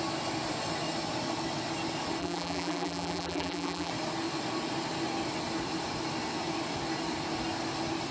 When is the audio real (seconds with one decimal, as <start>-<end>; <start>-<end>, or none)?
0.0-2.2; 3.9-8.1